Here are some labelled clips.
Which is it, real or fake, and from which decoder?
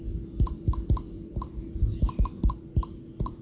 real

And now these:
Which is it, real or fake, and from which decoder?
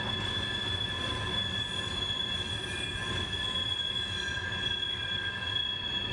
real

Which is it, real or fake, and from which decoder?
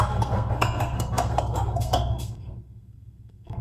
fake, codec, SNAC